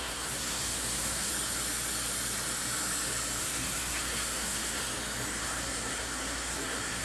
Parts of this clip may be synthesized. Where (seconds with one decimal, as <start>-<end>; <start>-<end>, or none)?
0.0-1.3; 3.4-4.8; 5.4-7.0